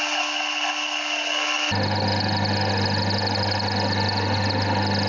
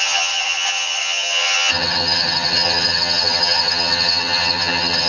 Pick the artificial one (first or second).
second